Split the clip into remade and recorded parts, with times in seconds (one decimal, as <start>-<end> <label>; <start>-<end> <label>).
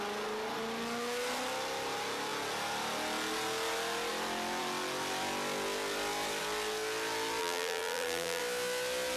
0.0-7.4 recorded; 7.4-8.4 remade; 8.4-9.2 recorded